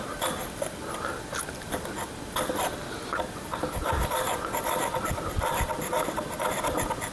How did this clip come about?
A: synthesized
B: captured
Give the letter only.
B